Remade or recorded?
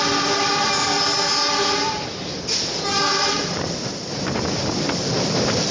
recorded